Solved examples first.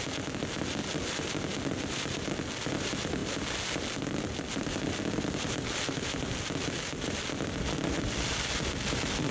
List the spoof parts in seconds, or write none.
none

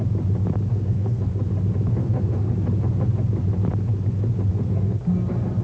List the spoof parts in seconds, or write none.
0.7-1.3 (codec, SNAC); 2.0-2.5; 4.5-5.0

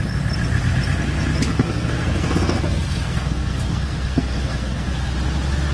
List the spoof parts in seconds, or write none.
1.5-4.9 (codec, SNAC)

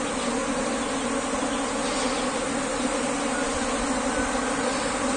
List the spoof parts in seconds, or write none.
none

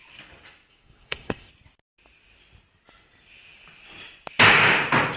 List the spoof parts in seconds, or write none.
0.7-1.5 (codec, SNAC)

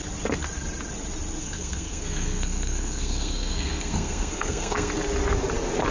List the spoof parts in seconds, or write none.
1.4-4.9 (codec, SNAC)

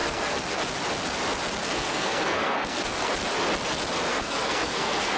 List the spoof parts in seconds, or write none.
0.0-0.6 (codec, SNAC); 1.6-3.1; 4.1-5.2